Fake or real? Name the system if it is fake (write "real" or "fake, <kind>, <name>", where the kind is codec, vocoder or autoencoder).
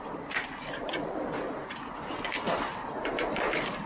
real